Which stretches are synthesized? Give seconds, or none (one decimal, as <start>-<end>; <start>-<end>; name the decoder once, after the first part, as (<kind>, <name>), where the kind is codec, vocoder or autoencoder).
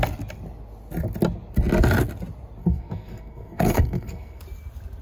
2.6-4.4 (codec, SNAC)